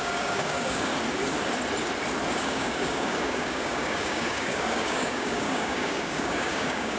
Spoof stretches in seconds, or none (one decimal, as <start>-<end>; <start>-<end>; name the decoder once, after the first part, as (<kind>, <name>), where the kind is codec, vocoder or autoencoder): 0.0-0.9 (codec, DAC); 2.3-7.0